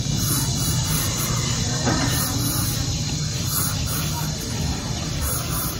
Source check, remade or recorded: recorded